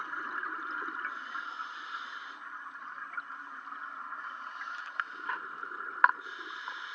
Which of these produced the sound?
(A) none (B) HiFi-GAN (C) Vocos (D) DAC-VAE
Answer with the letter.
A